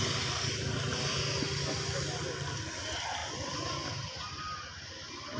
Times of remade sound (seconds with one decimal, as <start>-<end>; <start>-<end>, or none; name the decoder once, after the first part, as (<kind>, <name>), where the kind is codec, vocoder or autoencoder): none